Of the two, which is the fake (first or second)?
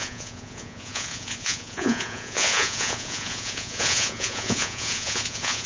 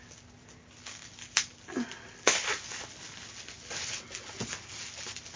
first